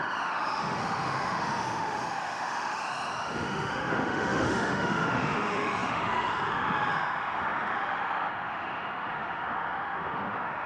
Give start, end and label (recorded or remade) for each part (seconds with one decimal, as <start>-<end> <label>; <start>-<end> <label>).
0.0-10.7 remade